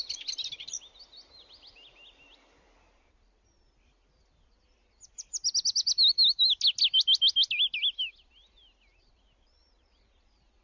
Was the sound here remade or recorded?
recorded